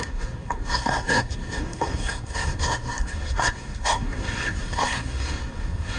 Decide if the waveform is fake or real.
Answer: fake